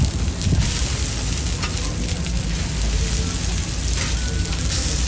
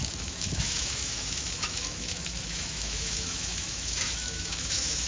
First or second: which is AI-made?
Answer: second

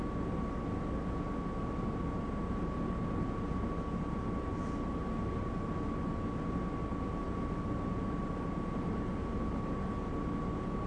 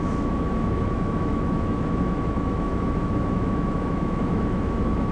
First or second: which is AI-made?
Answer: second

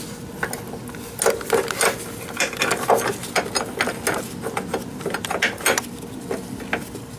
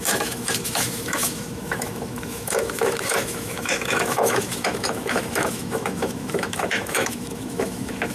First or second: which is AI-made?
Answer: second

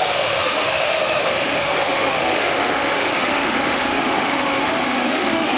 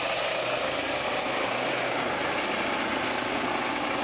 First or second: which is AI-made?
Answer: first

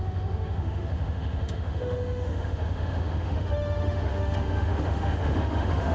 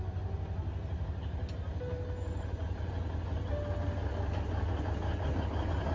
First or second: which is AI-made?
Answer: first